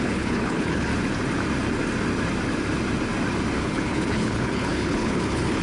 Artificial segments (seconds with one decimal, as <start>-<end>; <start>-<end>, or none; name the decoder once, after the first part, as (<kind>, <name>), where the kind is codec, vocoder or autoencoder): 0.0-0.9 (codec, HILCodec); 3.6-5.6